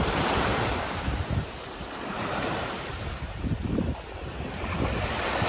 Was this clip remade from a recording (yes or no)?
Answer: yes